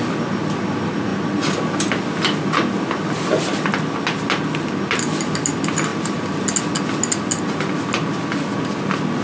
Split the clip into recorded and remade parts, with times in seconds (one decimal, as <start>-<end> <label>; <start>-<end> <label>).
0.0-9.2 recorded